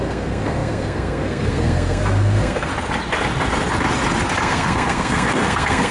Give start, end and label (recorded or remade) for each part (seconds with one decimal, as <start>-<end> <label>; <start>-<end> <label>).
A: 0.0-2.7 remade; 2.7-4.4 recorded; 4.4-5.9 remade